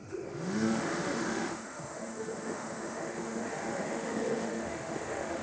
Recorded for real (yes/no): no